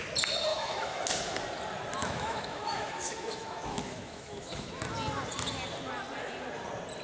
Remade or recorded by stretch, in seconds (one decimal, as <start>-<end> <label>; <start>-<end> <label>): 0.0-0.5 recorded; 0.5-1.0 remade; 1.0-2.0 recorded; 2.0-4.7 remade; 4.7-7.0 recorded